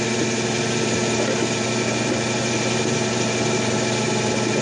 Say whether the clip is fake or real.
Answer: real